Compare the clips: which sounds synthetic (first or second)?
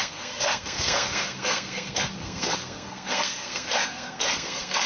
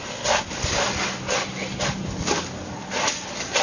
first